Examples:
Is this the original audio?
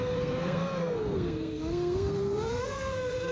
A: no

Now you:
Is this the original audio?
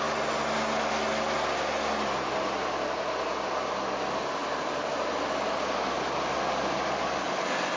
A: yes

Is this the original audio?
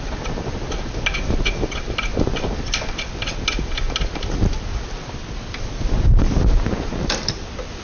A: yes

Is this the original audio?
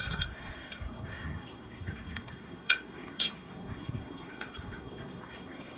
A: no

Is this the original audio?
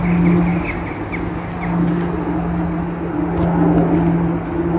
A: yes